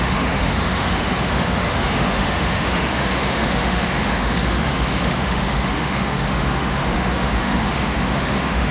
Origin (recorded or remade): remade